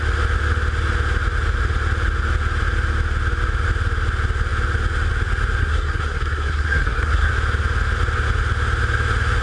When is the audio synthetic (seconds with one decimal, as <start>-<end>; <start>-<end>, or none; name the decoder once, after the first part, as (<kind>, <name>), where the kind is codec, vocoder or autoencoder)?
5.6-7.3 (codec, SNAC)